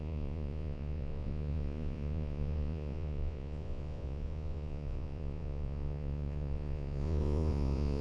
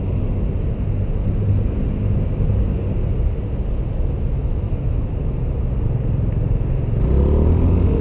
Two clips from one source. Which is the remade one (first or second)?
first